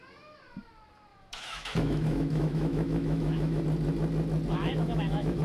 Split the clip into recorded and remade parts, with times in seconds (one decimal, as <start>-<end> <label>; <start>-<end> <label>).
0.0-1.1 recorded; 1.1-3.6 remade; 3.6-4.5 recorded; 4.5-5.4 remade